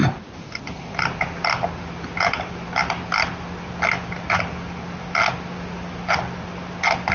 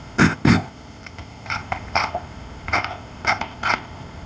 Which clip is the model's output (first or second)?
second